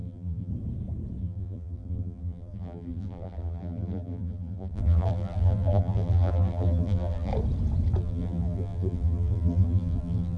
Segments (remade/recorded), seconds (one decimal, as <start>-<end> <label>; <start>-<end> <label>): 0.0-0.5 remade; 0.5-1.2 recorded; 1.2-7.3 remade; 7.3-8.0 recorded; 8.0-10.4 remade